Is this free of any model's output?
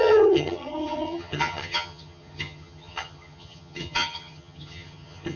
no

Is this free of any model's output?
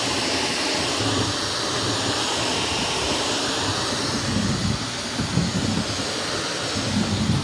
yes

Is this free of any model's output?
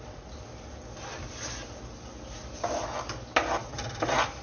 yes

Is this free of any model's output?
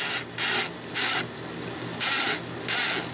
yes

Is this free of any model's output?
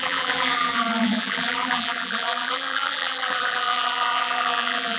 no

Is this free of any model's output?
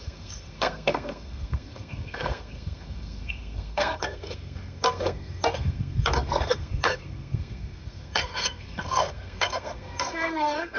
no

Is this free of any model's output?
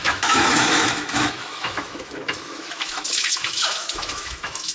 no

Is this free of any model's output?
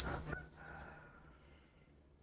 yes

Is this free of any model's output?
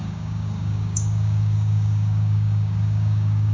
no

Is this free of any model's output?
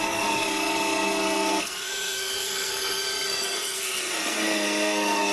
no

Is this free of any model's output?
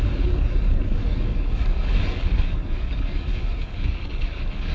no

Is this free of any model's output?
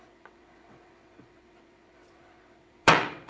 no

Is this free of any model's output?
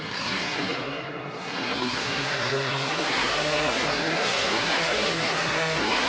no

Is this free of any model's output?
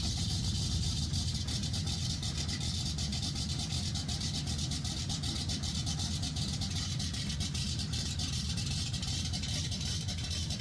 no